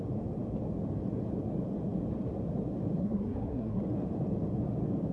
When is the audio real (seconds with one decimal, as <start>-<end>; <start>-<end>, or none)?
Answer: 0.0-3.0; 3.8-5.1